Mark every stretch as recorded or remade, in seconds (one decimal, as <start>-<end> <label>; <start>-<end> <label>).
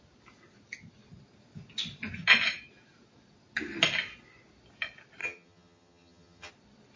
0.0-5.2 recorded; 5.2-6.5 remade; 6.5-7.0 recorded